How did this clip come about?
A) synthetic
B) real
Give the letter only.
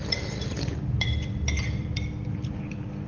A